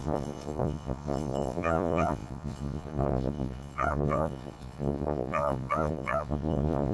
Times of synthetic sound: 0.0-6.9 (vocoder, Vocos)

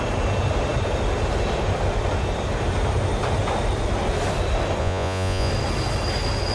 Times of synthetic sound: 4.8-5.5 (vocoder, Vocos)